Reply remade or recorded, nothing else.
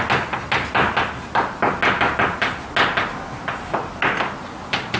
recorded